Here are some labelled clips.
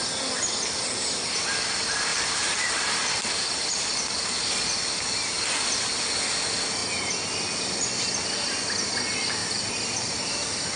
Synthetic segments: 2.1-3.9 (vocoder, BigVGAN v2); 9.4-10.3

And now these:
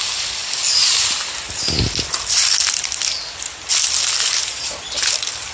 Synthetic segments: none

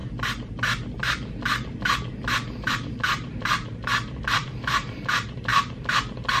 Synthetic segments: 2.7-5.5 (vocoder, BigVGAN v2)

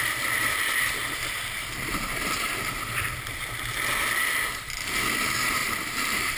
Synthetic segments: 5.6-6.4 (vocoder, BigVGAN v2)

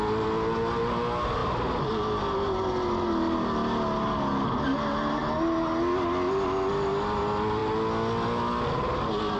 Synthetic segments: none

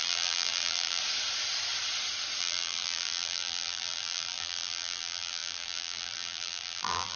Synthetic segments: 0.0-1.0 (vocoder, BigVGAN v2); 2.4-7.2

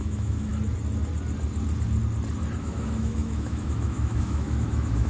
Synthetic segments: 0.0-0.5 (autoencoder, DAC-VAE); 2.6-5.1

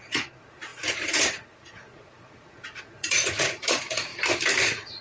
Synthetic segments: 0.0-4.1 (vocoder, Vocos); 4.6-5.0